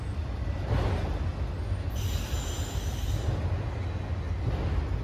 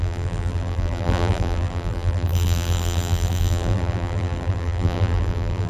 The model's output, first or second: second